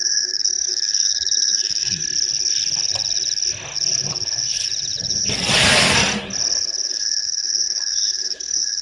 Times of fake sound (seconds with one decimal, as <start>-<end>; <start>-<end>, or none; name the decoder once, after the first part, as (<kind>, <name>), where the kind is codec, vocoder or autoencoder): 0.0-2.0 (autoencoder, DAC-VAE); 6.9-8.8